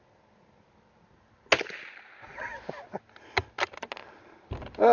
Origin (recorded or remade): recorded